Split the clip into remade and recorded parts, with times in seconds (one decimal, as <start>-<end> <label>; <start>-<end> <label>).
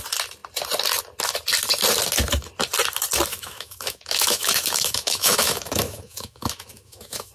0.0-3.3 recorded; 3.3-7.3 remade